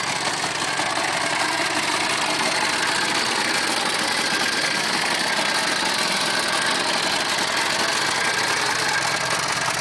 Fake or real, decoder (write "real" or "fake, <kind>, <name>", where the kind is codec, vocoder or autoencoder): real